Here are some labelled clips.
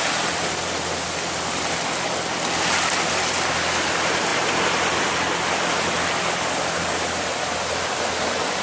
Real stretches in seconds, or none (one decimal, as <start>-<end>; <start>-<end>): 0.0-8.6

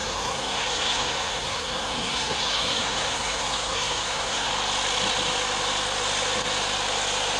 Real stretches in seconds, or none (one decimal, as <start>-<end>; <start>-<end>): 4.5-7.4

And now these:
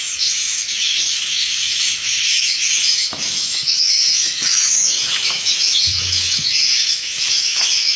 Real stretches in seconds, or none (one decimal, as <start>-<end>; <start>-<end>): none